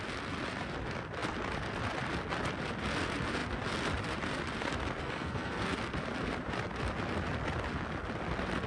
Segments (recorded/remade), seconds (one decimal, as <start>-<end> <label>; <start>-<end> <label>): 0.0-5.0 recorded; 5.0-5.8 remade; 5.8-8.7 recorded